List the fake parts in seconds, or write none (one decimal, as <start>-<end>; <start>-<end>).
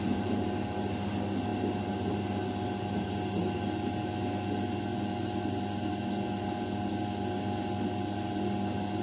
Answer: none